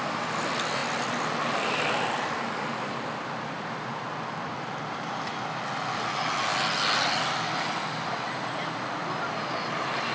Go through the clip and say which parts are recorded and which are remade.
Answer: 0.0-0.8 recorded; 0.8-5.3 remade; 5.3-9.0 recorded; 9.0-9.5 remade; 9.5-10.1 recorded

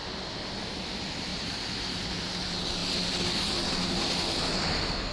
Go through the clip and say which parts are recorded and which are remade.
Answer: 0.0-1.3 recorded; 1.3-2.1 remade; 2.1-5.1 recorded

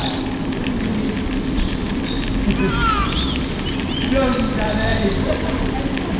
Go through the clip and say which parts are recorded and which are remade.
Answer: 0.0-6.2 recorded

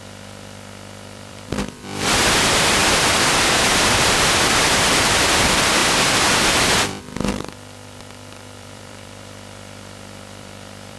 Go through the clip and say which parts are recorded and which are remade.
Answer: 0.0-11.0 remade

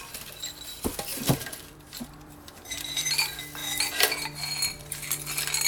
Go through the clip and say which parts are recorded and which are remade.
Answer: 0.0-1.1 recorded; 1.1-3.1 remade; 3.1-5.7 recorded